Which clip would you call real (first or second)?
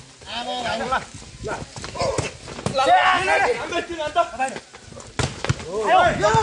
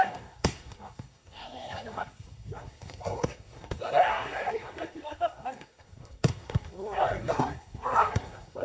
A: first